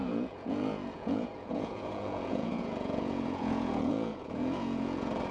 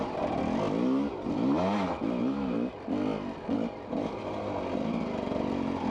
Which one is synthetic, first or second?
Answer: first